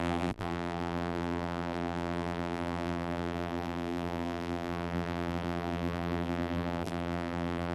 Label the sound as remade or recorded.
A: remade